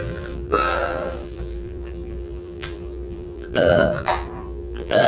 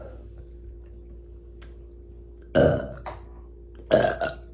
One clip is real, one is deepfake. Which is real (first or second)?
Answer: second